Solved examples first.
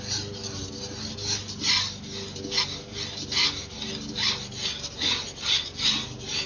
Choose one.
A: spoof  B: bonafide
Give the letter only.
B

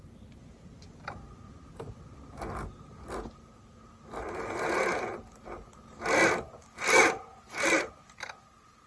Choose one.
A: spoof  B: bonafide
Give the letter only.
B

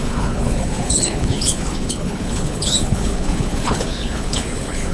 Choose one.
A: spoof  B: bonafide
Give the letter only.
A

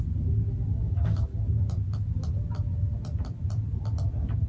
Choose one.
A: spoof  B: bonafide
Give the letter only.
B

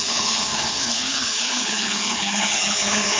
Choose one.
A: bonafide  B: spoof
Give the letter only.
B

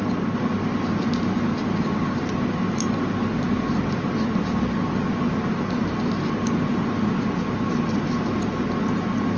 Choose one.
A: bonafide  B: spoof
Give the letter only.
A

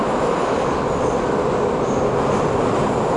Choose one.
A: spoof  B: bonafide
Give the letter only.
B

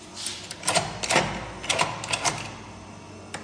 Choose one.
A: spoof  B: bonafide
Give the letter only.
B